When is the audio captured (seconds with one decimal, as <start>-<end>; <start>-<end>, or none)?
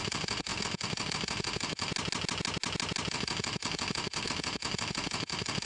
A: 1.9-3.1